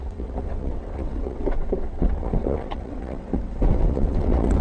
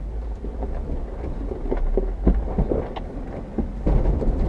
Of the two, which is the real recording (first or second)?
second